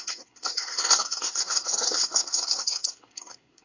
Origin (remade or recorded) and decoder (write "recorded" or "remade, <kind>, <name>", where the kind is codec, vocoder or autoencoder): remade, codec, SNAC